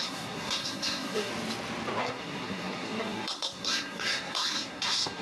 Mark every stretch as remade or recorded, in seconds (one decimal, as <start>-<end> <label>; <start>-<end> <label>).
0.0-1.3 remade; 1.3-2.0 recorded; 2.0-5.2 remade